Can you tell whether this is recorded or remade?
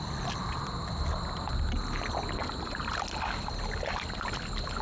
recorded